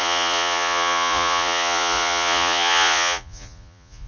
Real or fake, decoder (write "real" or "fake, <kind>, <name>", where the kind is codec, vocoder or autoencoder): fake, vocoder, Vocos